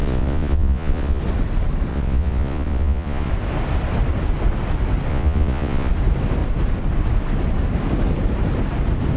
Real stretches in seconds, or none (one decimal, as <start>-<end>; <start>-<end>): 1.2-1.9; 3.3-5.1; 5.9-9.2